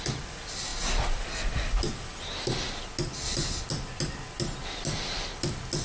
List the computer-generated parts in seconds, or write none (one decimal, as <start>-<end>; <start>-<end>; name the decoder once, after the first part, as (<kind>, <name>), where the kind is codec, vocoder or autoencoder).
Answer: none

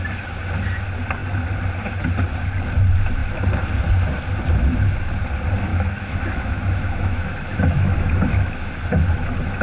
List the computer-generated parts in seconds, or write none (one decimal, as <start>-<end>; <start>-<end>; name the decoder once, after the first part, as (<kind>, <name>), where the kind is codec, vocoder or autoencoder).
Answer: 5.7-8.7 (autoencoder, DAC-VAE)

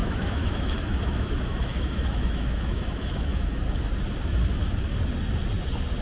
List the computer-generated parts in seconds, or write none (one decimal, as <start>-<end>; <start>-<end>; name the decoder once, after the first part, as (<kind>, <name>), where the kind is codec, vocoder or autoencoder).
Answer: 0.0-3.6 (autoencoder, DAC-VAE)

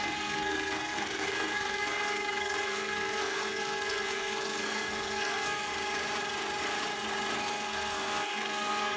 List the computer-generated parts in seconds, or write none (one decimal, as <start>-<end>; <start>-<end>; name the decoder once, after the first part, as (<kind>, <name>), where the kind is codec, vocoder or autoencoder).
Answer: 0.0-5.7 (codec, SNAC); 7.4-9.0